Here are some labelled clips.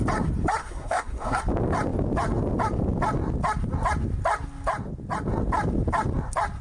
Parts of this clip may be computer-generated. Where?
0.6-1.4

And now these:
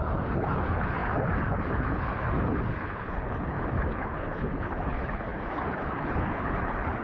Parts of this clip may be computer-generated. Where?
0.0-7.0

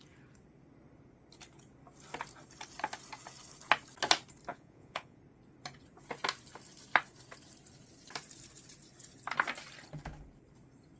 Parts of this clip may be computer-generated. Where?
4.5-5.2

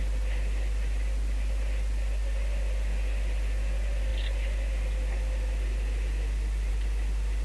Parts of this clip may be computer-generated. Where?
none

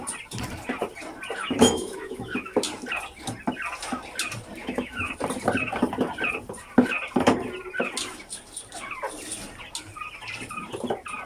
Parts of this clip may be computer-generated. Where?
1.4-2.6; 4.6-5.1